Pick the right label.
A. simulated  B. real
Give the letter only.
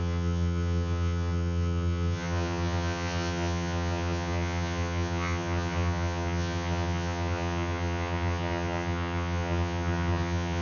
A